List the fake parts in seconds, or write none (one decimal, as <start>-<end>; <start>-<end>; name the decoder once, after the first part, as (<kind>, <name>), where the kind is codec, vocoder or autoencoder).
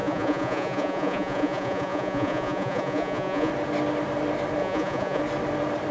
0.0-3.5 (vocoder, Vocos); 4.6-5.2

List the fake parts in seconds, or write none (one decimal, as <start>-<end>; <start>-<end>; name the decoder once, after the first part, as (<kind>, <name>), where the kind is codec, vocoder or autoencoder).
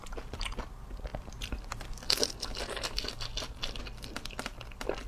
none